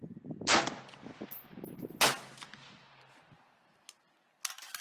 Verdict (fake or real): real